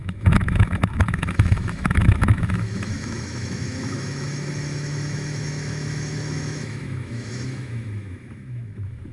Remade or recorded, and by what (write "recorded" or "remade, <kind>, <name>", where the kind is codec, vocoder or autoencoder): remade, autoencoder, DAC-VAE